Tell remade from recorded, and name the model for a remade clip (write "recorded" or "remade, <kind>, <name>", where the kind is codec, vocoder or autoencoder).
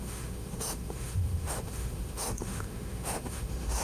remade, autoencoder, DAC-VAE